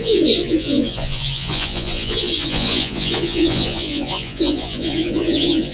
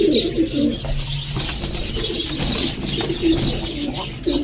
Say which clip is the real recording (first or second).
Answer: second